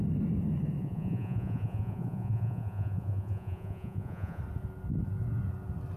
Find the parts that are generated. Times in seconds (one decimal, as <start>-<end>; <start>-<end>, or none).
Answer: 0.8-4.4